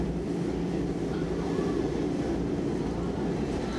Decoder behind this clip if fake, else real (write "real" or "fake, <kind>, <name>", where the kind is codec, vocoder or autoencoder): fake, vocoder, BigVGAN v2